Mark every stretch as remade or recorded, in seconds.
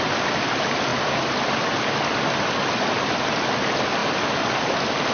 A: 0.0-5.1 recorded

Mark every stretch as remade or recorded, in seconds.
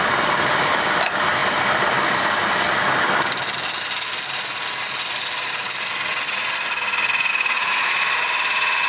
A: 0.0-7.3 recorded; 7.3-7.9 remade; 7.9-8.9 recorded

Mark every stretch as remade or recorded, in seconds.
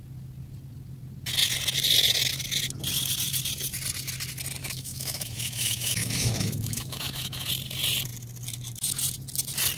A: 0.0-4.6 recorded; 4.6-7.5 remade; 7.5-9.8 recorded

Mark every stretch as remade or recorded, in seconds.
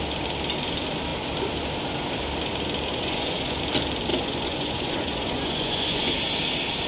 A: 0.0-2.9 recorded; 2.9-3.6 remade; 3.6-4.1 recorded; 4.1-6.1 remade; 6.1-6.9 recorded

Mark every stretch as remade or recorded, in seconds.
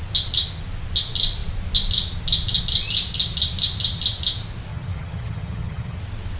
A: 0.0-4.7 recorded; 4.7-6.0 remade; 6.0-6.4 recorded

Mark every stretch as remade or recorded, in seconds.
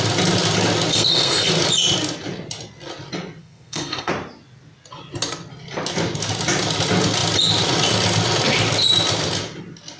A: 0.0-0.9 recorded; 0.9-1.5 remade; 1.5-3.4 recorded; 3.4-4.1 remade; 4.1-10.0 recorded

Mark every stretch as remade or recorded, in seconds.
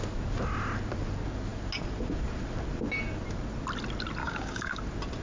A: 0.0-4.2 recorded; 4.2-4.8 remade; 4.8-5.2 recorded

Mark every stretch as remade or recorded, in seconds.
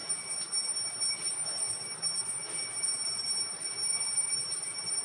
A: 0.0-5.0 recorded